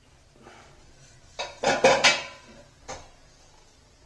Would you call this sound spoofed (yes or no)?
no